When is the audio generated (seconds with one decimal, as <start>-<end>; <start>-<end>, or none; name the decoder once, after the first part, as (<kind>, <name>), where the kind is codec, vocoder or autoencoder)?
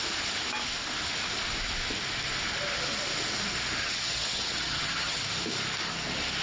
3.8-5.2 (vocoder, HiFi-GAN)